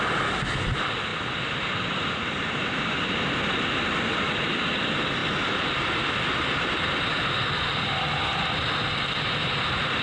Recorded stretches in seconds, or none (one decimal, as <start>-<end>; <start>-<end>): 0.0-1.1; 3.2-10.0

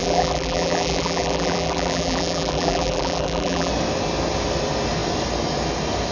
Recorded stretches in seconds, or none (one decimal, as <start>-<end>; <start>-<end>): 3.7-6.1

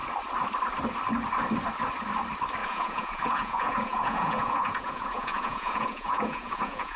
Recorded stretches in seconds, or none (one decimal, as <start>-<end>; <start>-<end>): 0.0-2.6

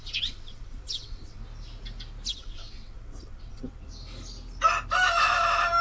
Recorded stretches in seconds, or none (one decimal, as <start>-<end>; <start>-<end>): 1.4-2.3; 3.9-5.8

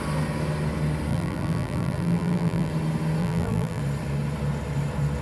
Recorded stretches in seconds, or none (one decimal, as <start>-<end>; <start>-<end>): 0.0-1.1; 2.7-3.2; 3.8-5.2

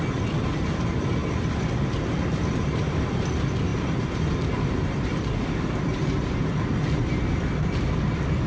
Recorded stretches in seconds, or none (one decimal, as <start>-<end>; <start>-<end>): 0.0-8.5